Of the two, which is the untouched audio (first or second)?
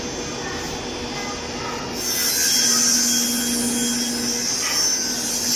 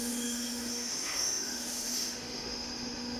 first